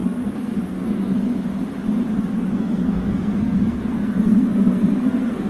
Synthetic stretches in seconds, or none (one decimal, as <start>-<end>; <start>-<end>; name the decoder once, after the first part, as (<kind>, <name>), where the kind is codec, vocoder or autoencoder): 0.0-1.3 (codec, SNAC); 2.2-5.5